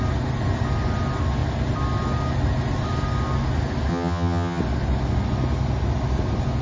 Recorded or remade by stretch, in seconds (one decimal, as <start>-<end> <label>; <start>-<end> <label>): 0.0-3.9 recorded; 3.9-4.6 remade; 4.6-6.6 recorded